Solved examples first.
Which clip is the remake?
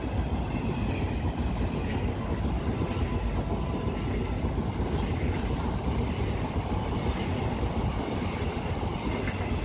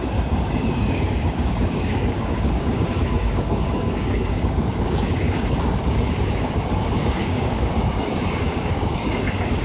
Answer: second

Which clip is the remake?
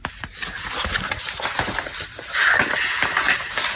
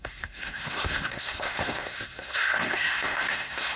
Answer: second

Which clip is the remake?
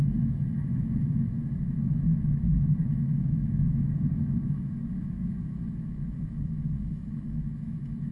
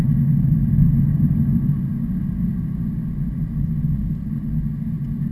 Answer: first